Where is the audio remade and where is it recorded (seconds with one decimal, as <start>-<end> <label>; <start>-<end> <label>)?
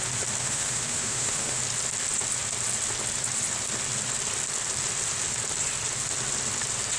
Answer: 0.0-0.4 recorded; 0.4-1.6 remade; 1.6-7.0 recorded